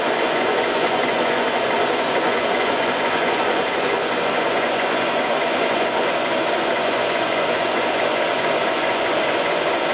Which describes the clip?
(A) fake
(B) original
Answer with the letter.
A